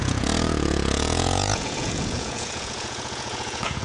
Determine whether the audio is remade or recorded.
remade